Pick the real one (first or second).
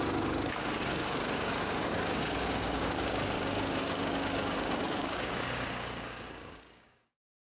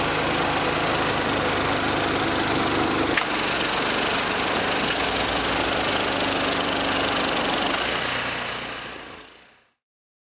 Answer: second